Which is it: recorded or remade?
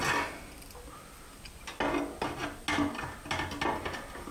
recorded